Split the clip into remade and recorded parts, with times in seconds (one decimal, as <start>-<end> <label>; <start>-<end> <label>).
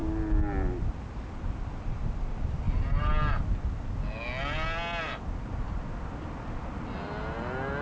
0.0-7.8 recorded